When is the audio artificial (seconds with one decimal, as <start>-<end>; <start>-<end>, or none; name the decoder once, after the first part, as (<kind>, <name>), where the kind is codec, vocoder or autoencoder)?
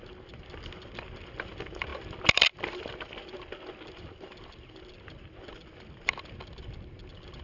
none